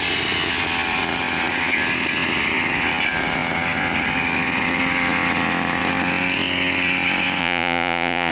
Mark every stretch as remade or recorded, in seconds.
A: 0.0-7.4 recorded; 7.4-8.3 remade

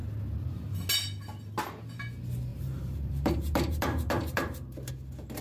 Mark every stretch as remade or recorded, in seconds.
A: 0.0-2.5 recorded; 2.5-4.9 remade; 4.9-5.4 recorded

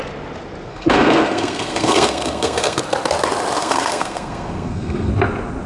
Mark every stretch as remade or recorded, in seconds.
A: 0.0-0.7 recorded; 0.7-2.8 remade; 2.8-3.6 recorded; 3.6-5.1 remade; 5.1-5.7 recorded

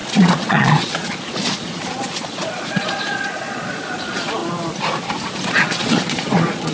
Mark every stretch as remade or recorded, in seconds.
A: 0.0-4.4 remade; 4.4-5.4 recorded; 5.4-6.7 remade

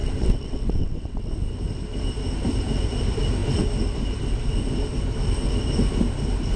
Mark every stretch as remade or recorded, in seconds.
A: 0.0-1.3 remade; 1.3-6.6 recorded